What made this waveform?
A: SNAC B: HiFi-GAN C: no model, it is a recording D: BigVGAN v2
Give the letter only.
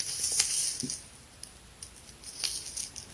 C